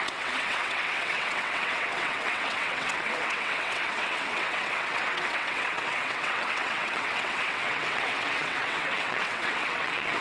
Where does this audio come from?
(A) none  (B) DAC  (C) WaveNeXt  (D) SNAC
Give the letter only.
C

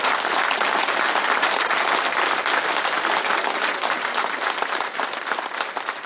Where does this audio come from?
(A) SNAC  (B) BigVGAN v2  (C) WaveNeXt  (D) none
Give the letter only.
D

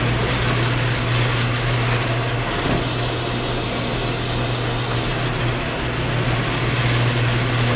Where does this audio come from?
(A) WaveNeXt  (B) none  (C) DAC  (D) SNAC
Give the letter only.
B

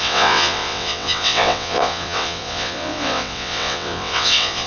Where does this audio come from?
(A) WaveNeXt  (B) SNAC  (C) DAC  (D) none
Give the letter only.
A